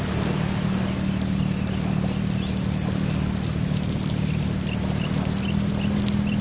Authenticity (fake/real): real